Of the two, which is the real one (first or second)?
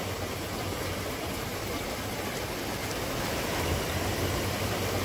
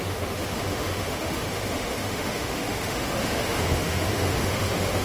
first